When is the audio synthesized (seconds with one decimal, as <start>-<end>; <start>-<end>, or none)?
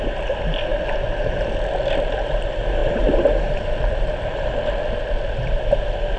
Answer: 0.7-1.3; 2.8-4.5